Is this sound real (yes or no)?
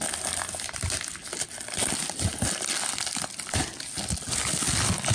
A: yes